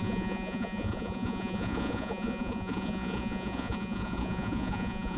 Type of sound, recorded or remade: remade